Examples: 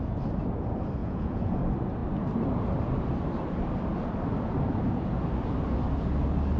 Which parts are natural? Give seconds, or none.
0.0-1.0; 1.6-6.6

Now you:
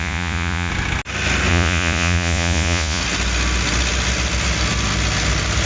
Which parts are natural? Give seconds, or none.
0.7-1.5; 3.0-5.7

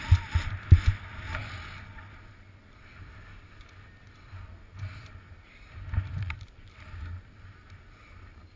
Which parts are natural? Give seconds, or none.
0.0-8.6